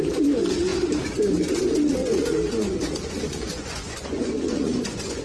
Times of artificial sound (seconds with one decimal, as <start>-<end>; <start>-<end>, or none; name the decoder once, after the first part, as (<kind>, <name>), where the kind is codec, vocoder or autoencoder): 2.0-5.2 (vocoder, Vocos)